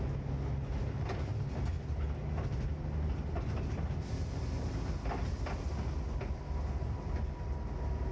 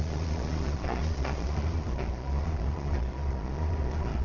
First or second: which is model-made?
second